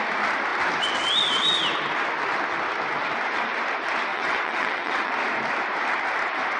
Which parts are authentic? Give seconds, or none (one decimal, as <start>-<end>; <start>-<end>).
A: 0.0-4.1; 5.1-6.6